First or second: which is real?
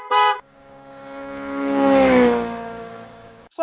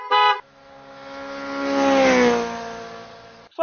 second